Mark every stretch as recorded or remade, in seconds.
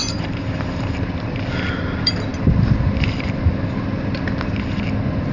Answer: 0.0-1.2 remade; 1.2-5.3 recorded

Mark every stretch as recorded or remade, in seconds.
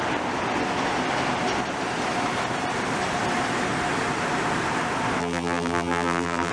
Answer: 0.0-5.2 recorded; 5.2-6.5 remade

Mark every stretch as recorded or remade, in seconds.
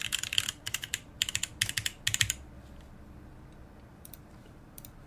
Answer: 0.0-1.1 remade; 1.1-3.9 recorded; 3.9-5.1 remade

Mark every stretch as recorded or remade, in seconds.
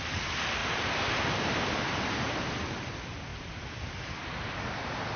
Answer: 0.0-3.3 recorded; 3.3-4.2 remade; 4.2-5.2 recorded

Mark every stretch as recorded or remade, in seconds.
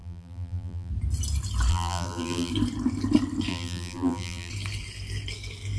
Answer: 0.0-0.9 remade; 0.9-1.7 recorded; 1.7-2.5 remade; 2.5-3.5 recorded; 3.5-4.5 remade; 4.5-5.8 recorded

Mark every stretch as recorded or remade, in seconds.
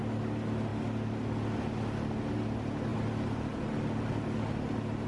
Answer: 0.0-5.1 recorded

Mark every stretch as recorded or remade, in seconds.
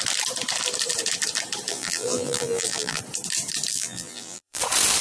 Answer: 0.0-1.7 recorded; 1.7-3.0 remade; 3.0-3.7 recorded; 3.7-4.6 remade; 4.6-5.0 recorded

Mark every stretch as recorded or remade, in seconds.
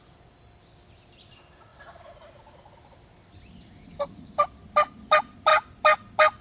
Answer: 0.0-6.4 recorded